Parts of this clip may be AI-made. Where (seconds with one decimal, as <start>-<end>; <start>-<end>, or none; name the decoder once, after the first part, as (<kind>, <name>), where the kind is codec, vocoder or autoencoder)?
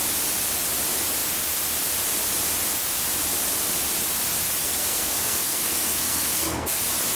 4.6-6.8 (codec, SNAC)